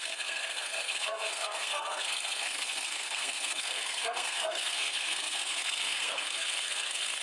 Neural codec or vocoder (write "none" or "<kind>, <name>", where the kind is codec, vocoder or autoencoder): codec, SNAC